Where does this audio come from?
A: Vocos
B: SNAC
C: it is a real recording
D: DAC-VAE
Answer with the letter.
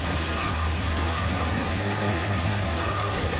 B